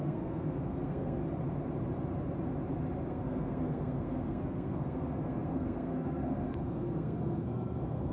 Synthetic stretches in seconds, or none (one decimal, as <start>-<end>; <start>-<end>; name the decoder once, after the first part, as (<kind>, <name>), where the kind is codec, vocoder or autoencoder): 0.0-1.2 (codec, SNAC); 3.1-8.1